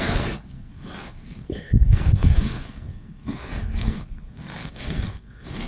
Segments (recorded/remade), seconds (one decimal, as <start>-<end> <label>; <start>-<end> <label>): 0.0-5.7 remade